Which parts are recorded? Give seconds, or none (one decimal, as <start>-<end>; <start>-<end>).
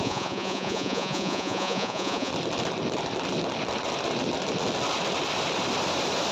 2.3-6.3